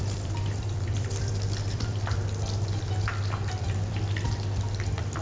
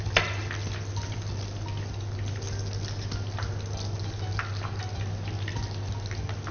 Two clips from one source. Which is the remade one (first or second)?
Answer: first